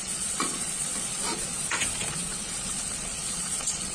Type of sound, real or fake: fake